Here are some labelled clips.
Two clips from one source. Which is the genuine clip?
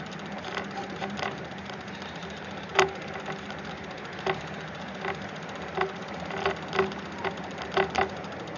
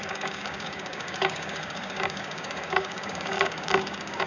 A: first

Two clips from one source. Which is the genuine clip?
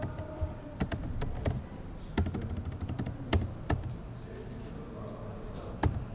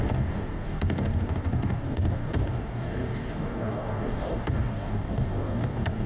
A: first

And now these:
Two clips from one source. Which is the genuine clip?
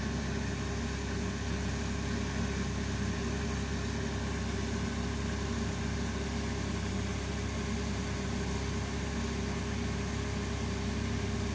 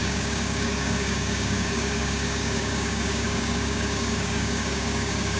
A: first